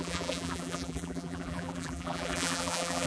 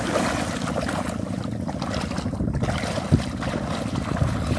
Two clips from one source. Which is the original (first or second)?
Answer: second